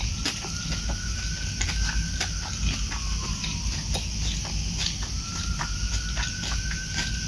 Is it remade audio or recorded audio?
recorded